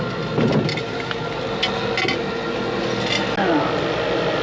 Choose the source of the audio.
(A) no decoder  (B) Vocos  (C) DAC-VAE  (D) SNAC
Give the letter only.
A